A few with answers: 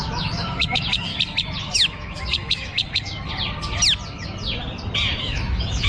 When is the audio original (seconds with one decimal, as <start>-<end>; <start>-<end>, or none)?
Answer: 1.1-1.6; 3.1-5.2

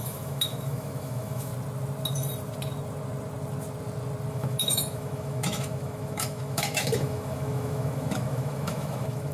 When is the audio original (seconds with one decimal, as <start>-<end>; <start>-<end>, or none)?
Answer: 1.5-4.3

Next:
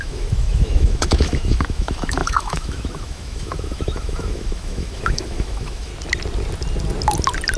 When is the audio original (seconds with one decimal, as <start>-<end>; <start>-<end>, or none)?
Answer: 5.9-7.6

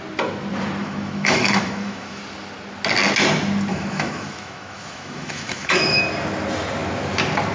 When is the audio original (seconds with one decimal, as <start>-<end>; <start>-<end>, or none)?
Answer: 0.0-0.8; 2.2-3.7; 6.0-7.5

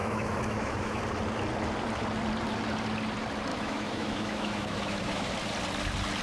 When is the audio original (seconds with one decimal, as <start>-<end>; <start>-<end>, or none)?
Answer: 1.0-3.5; 5.3-6.2